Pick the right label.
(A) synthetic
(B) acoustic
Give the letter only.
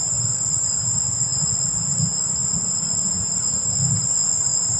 B